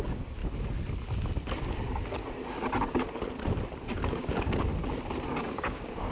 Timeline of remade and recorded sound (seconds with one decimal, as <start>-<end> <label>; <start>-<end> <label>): 0.0-0.4 remade; 0.4-4.1 recorded; 4.1-4.7 remade; 4.7-5.3 recorded; 5.3-6.1 remade